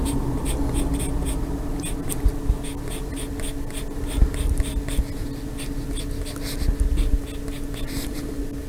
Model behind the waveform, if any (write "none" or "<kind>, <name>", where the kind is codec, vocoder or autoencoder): none